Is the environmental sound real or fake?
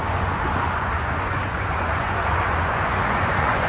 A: fake